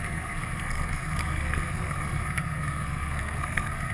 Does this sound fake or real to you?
fake